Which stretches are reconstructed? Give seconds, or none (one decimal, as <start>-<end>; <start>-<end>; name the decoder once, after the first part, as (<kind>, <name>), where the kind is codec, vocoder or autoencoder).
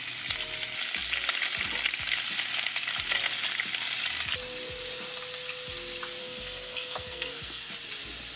6.2-7.7 (codec, SNAC)